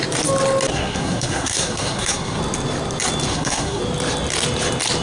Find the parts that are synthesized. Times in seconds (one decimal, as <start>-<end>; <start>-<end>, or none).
0.7-2.4; 3.3-3.8